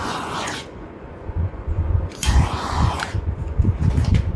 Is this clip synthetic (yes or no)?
yes